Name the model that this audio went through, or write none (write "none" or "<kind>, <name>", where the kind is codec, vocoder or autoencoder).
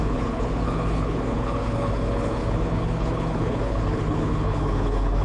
codec, HILCodec